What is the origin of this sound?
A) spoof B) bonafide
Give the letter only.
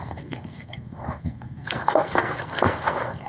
A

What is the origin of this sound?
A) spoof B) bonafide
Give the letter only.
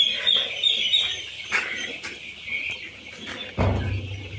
B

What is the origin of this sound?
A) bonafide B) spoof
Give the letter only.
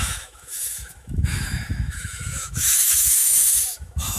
B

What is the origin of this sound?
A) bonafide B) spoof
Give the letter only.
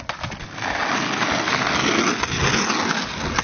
A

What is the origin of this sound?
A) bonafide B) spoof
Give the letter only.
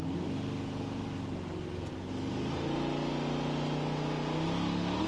A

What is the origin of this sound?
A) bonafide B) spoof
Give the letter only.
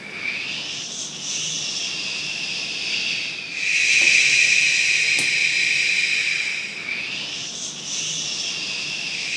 A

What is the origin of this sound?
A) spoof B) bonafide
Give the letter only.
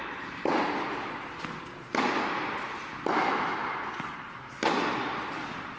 B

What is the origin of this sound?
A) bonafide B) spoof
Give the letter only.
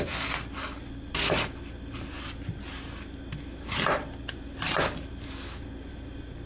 A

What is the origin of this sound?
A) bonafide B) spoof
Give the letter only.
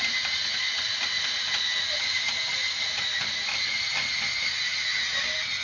A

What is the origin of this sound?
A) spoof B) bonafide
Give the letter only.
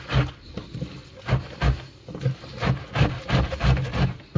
B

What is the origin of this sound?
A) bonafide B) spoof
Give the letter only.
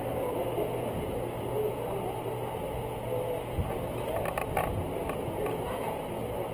A